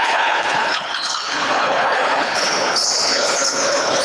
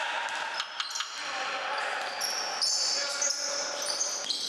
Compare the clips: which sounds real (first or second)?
second